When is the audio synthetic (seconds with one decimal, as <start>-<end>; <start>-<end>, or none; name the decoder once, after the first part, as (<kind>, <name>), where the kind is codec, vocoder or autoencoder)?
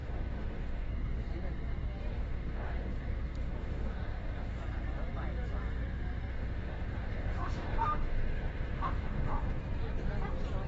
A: 0.0-0.9 (autoencoder, DAC-VAE); 2.1-4.6; 6.3-9.6